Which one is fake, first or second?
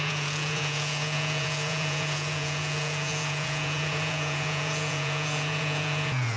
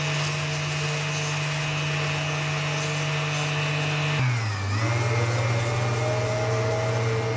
first